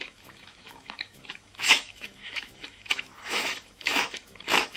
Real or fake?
fake